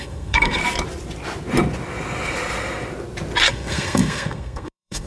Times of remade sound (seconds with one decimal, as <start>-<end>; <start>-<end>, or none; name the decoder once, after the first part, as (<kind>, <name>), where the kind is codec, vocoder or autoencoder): 0.0-0.6 (codec, SNAC); 3.5-5.1